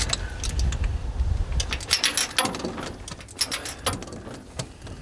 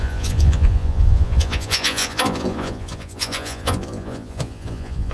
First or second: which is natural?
first